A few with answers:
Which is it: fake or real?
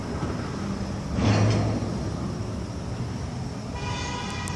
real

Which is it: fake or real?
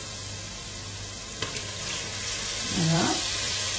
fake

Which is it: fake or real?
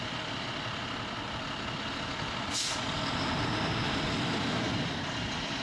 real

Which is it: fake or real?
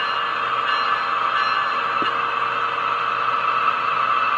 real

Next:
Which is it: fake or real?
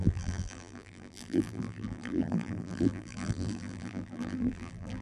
fake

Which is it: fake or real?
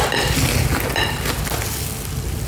real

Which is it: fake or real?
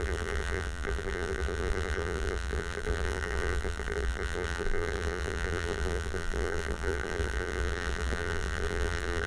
fake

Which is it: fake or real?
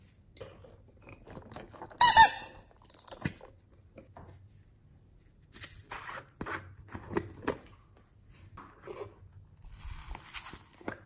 real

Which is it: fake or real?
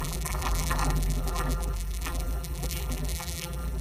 fake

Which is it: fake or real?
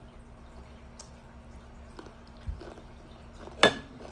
real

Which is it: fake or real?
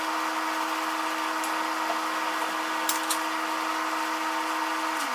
real